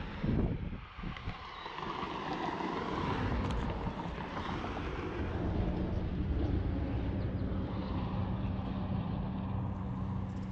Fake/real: real